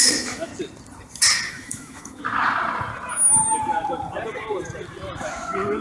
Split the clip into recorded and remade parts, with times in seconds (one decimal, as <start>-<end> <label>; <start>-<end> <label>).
0.0-0.5 remade; 0.5-1.5 recorded; 1.5-2.2 remade; 2.2-5.8 recorded